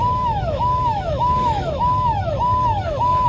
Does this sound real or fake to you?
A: fake